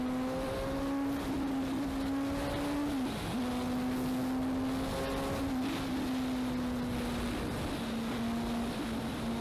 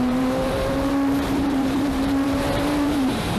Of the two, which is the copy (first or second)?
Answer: second